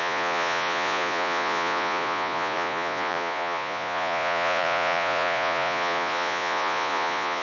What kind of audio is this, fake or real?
fake